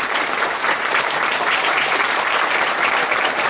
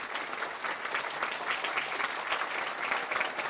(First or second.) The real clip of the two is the second